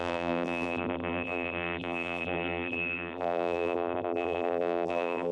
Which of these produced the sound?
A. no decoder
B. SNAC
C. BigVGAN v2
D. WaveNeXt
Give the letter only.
C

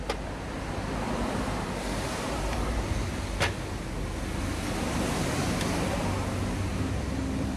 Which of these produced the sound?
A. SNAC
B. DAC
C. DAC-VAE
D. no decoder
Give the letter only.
D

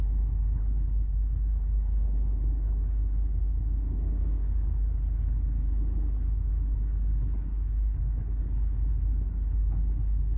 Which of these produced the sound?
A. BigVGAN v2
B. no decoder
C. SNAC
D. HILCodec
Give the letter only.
D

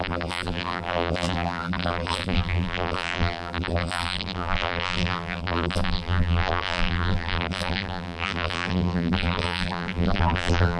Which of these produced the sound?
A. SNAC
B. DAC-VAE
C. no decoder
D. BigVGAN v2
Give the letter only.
D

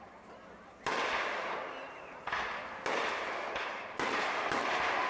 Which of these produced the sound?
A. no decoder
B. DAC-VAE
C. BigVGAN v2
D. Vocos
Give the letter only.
A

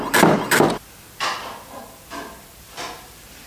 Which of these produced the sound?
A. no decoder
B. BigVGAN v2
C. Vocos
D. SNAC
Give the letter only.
A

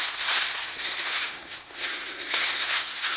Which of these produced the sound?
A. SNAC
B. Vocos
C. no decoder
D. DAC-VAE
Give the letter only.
A